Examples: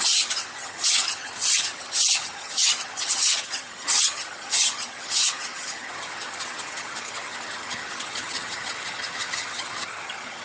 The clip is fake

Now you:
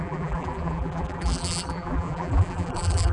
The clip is fake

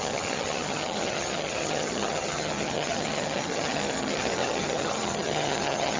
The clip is fake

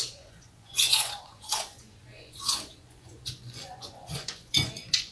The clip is fake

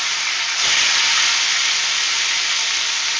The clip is real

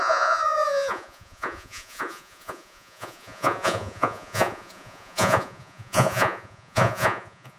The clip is fake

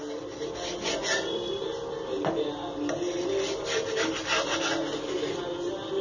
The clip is real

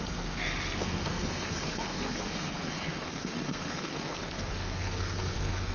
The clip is fake